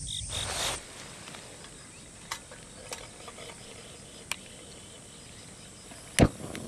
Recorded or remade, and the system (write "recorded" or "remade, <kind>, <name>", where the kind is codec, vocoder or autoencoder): recorded